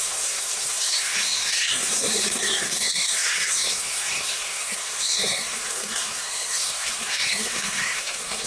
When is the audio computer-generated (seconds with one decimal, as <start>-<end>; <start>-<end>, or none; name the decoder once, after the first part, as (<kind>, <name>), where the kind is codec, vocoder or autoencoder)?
0.0-8.5 (codec, SNAC)